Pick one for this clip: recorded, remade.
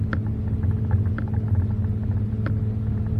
recorded